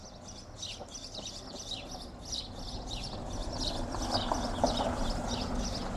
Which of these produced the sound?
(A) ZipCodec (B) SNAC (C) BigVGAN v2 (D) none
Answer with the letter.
D